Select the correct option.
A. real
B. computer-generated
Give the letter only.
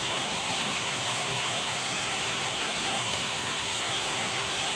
B